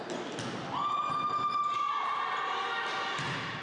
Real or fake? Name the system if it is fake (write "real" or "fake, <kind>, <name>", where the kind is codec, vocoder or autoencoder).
real